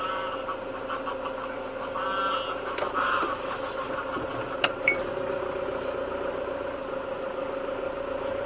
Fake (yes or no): no